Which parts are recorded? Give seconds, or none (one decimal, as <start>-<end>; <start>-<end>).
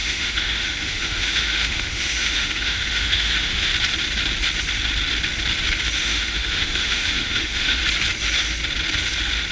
3.7-6.0; 7.8-9.5